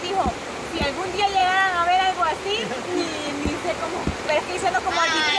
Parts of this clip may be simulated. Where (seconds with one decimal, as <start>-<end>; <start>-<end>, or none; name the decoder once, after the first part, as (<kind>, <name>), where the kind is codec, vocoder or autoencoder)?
none